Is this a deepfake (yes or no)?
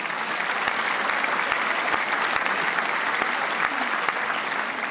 yes